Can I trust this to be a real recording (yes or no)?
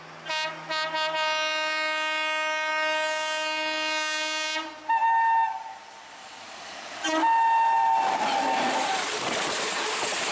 yes